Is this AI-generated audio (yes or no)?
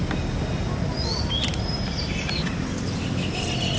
no